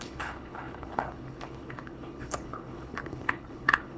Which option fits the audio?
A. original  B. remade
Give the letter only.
B